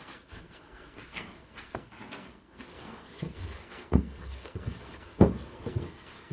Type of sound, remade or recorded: remade